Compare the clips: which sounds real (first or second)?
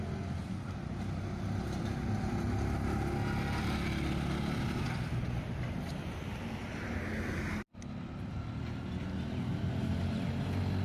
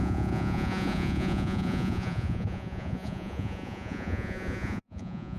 first